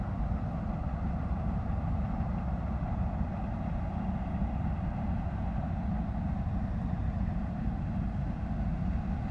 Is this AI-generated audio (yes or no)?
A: yes